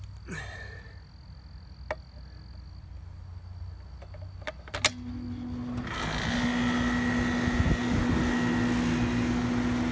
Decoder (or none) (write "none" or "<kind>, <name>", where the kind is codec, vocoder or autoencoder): none